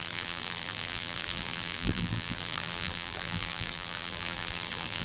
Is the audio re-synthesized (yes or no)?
yes